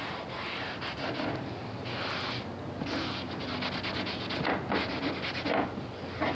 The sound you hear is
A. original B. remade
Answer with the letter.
A